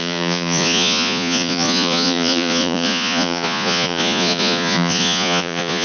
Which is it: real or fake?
fake